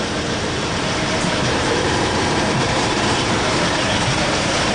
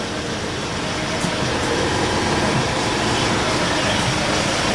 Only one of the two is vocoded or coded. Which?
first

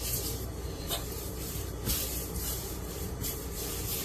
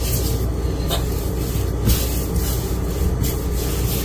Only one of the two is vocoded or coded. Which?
first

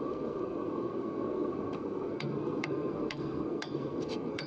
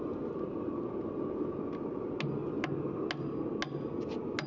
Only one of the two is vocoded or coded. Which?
first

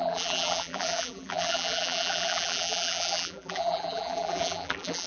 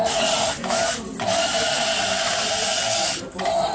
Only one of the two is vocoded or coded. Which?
first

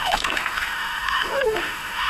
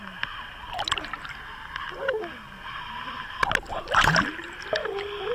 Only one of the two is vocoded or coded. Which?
first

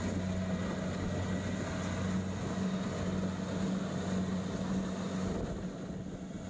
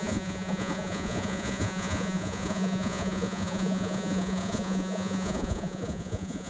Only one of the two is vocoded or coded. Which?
second